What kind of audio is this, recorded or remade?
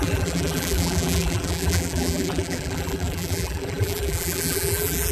remade